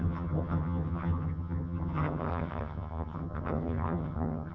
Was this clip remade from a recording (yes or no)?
yes